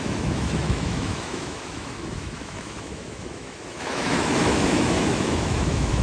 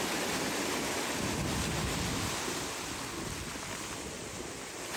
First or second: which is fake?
first